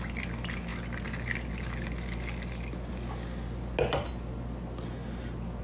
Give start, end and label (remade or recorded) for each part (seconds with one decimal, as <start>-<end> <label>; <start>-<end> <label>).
0.0-5.6 recorded